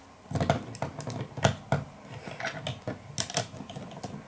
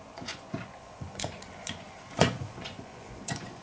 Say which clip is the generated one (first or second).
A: second